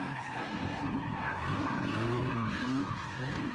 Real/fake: fake